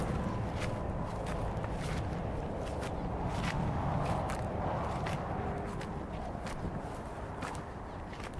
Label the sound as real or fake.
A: real